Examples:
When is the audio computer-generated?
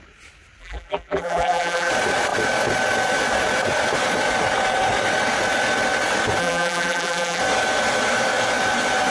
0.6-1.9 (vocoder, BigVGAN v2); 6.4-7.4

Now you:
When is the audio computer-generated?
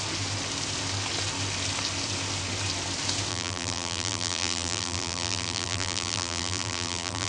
3.3-7.3 (vocoder, BigVGAN v2)